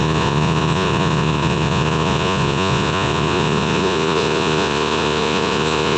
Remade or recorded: remade